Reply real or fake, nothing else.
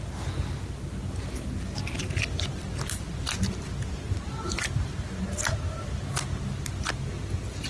real